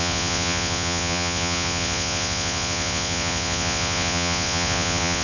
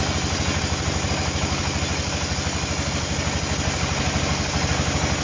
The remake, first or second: first